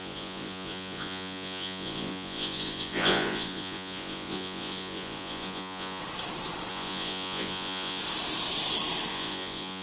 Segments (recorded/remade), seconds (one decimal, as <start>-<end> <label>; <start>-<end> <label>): 0.0-6.0 remade; 6.0-6.7 recorded; 6.7-8.0 remade; 8.0-9.1 recorded; 9.1-9.8 remade